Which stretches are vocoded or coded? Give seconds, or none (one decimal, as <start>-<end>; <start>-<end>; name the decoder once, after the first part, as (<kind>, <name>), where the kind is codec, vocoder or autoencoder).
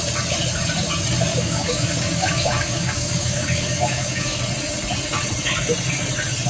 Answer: 1.3-4.4 (codec, DAC)